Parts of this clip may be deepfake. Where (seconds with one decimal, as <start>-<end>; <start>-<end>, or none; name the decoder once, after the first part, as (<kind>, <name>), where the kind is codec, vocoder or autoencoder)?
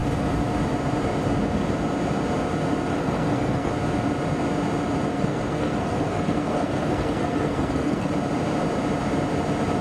2.9-3.7 (codec, SNAC); 5.1-8.1